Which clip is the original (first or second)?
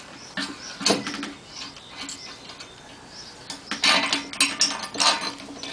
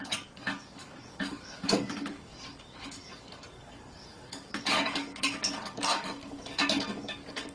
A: first